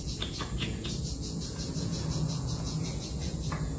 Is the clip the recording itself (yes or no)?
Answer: no